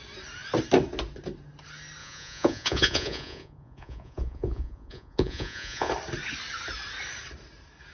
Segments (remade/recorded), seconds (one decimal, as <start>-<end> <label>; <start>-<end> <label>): 0.0-2.0 recorded; 2.0-5.9 remade; 5.9-7.9 recorded